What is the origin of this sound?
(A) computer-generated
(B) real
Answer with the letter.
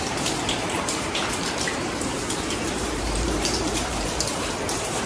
A